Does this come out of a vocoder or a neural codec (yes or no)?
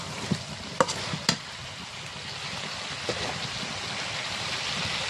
no